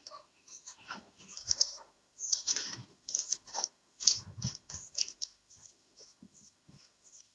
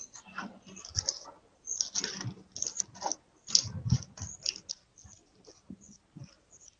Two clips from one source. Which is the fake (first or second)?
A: first